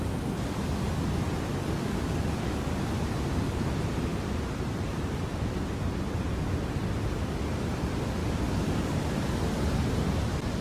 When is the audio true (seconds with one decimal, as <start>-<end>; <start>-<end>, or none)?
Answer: 0.0-1.6; 2.7-8.2; 9.1-10.6